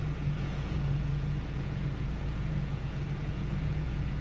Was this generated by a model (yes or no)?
yes